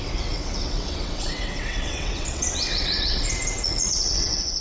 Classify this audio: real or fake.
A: fake